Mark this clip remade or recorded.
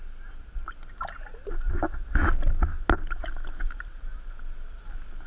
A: recorded